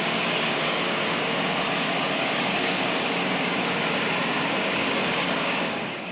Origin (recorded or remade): remade